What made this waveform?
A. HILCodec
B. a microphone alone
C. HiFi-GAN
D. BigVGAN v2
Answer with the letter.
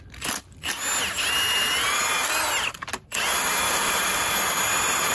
B